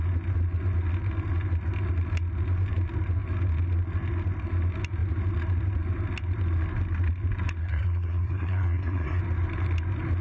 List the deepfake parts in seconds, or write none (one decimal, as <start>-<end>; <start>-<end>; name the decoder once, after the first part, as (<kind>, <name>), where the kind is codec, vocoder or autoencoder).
7.6-9.2 (codec, SNAC)